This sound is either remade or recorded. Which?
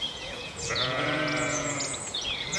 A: remade